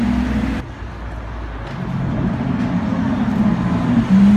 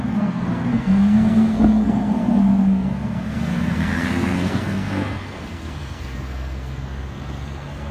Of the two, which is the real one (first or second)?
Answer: first